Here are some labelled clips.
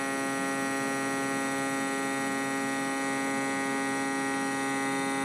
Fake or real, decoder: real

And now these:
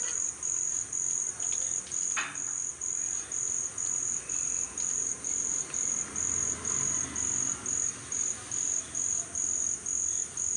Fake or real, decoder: real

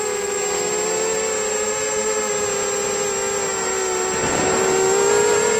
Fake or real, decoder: real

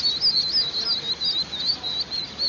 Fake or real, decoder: real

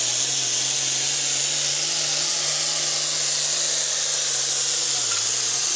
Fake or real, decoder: real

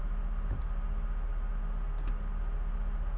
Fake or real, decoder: real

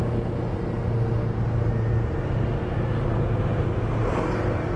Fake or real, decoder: real